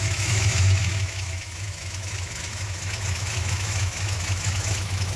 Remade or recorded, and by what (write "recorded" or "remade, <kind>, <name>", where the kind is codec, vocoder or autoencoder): remade, autoencoder, DAC-VAE